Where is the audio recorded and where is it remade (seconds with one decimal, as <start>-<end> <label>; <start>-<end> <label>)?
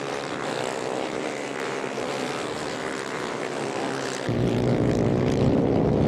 0.0-6.1 recorded